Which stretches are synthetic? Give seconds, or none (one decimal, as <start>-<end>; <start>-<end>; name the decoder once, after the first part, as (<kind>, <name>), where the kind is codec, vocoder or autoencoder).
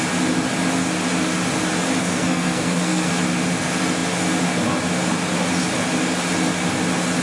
2.0-3.1 (codec, SNAC)